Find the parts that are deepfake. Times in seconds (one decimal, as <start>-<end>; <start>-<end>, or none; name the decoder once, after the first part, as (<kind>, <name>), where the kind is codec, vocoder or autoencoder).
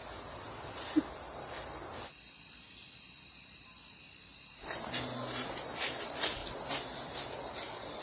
none